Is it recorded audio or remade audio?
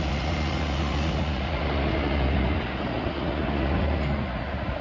remade